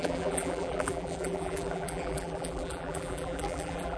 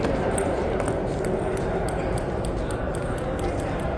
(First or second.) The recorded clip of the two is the second